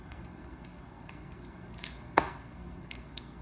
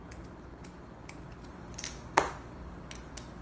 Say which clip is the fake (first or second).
first